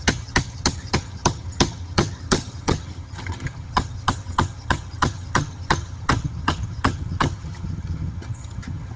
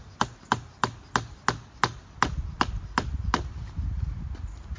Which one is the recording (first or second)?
second